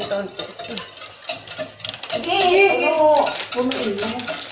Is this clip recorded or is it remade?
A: recorded